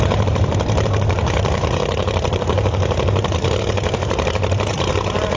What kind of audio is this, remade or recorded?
remade